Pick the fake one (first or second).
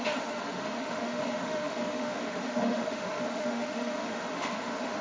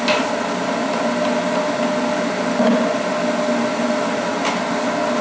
first